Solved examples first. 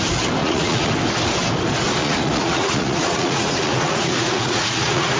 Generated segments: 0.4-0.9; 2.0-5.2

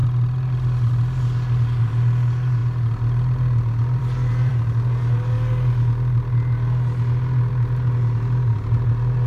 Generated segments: none

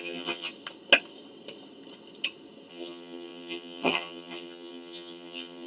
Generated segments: 0.0-0.5; 2.7-5.7